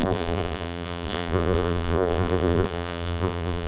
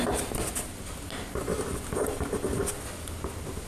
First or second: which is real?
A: second